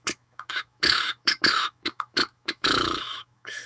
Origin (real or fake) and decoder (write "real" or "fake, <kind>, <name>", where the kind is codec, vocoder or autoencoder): fake, autoencoder, DAC-VAE